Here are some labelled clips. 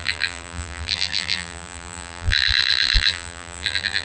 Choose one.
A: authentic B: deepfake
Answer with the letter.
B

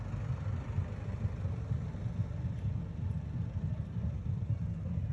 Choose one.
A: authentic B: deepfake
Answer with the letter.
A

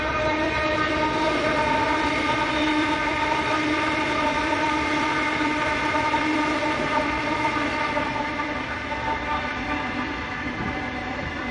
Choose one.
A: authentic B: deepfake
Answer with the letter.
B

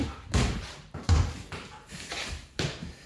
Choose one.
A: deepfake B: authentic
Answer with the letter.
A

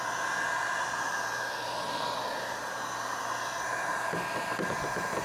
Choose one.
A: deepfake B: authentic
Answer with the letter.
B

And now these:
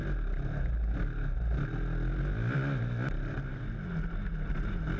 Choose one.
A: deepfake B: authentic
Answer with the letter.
B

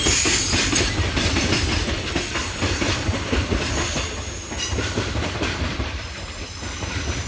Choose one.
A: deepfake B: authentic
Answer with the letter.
A